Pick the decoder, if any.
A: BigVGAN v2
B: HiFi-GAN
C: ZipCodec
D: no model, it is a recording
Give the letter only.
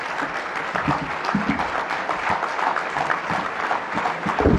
A